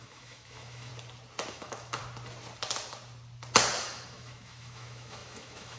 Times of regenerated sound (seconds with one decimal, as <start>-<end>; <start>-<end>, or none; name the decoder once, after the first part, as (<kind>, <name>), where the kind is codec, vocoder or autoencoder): 0.0-0.9 (autoencoder, DAC-VAE); 1.5-2.0; 3.8-5.8